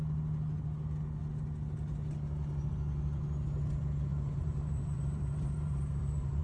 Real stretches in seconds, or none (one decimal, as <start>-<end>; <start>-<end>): 0.0-4.1

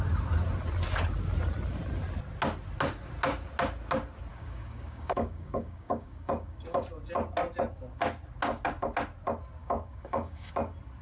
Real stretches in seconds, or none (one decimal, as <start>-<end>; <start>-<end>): 0.0-4.3; 6.8-9.6; 10.5-11.0

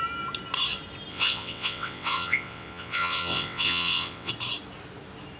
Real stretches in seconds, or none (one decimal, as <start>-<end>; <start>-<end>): 0.0-1.1; 4.3-5.4

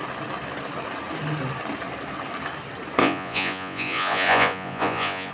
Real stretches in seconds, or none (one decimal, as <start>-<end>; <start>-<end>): 0.0-3.0

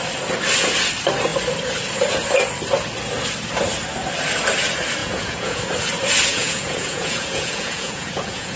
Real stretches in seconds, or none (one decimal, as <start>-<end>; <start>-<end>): 0.0-5.0; 5.6-6.3

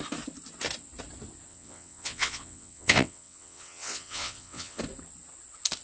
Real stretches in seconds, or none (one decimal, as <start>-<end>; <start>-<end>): 0.0-1.5; 4.8-5.8

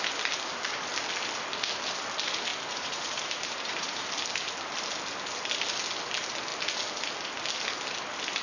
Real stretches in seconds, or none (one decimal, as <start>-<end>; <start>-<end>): 0.0-2.5; 4.1-8.4

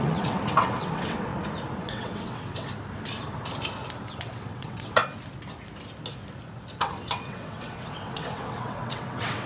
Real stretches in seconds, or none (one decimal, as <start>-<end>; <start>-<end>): 1.3-1.8; 2.7-4.2; 5.0-6.8